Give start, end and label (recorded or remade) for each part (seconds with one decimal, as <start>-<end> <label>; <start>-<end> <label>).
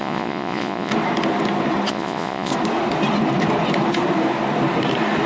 0.0-0.9 remade; 0.9-1.9 recorded; 1.9-2.5 remade; 2.5-5.3 recorded